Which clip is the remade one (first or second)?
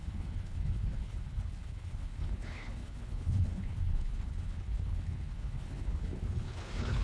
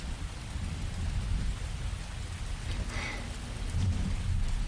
first